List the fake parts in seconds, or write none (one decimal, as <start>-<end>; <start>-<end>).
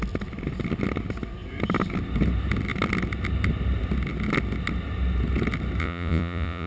5.8-6.7